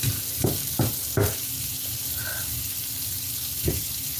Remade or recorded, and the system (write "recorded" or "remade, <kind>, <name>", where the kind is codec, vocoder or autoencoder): recorded